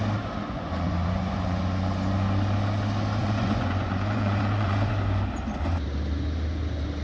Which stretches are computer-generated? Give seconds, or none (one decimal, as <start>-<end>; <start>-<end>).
0.4-1.6; 3.2-4.9